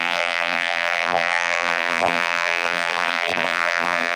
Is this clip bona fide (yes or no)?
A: no